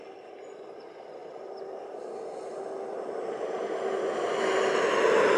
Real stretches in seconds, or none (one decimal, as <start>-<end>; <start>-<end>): 0.0-5.4